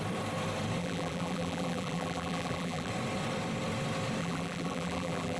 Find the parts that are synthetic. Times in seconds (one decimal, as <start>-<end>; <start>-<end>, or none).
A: 0.8-2.9; 4.2-5.4